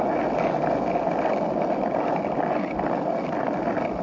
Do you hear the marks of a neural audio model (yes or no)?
no